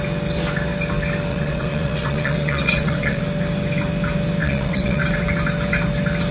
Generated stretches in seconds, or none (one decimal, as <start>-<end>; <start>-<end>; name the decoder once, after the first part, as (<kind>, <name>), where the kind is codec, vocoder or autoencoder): 1.3-3.2 (vocoder, WaveNeXt); 4.4-5.0